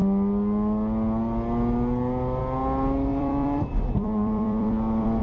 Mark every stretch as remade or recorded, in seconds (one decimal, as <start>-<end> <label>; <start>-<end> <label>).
0.0-3.1 recorded; 3.1-5.2 remade